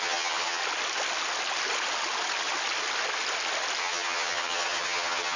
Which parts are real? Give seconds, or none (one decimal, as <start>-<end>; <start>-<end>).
0.6-3.8